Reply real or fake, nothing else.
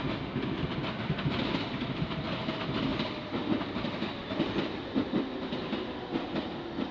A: real